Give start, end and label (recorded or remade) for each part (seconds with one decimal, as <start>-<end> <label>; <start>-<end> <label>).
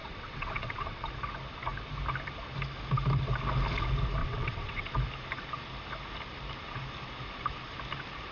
0.0-1.1 remade; 1.1-4.2 recorded; 4.2-4.9 remade; 4.9-8.3 recorded